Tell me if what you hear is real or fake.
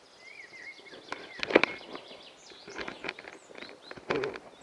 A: real